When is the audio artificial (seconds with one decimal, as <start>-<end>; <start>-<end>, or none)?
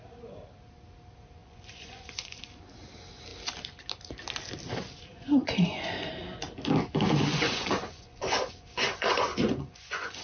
1.4-2.4; 5.1-6.1; 7.3-10.2